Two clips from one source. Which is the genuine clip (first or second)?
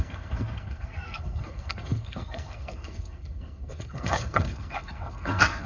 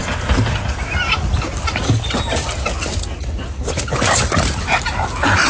second